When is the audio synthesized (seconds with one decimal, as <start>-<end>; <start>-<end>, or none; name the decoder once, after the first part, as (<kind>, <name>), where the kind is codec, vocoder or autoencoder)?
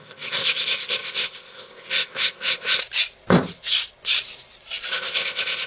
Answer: 0.0-2.8 (codec, ZipCodec); 4.9-5.7